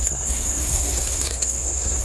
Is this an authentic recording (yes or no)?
no